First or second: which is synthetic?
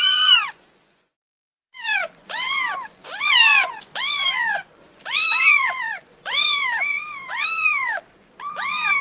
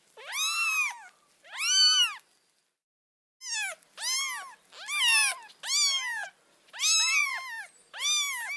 first